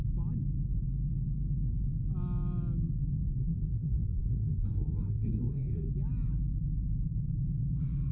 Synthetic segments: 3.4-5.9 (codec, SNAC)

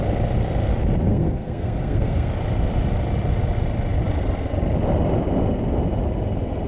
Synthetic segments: 1.1-2.3 (codec, SNAC)

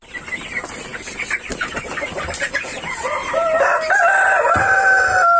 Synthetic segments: none

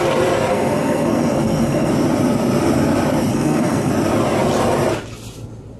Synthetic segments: 0.5-1.9 (codec, SNAC); 3.3-3.9